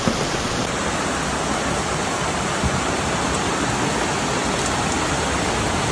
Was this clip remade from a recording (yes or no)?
no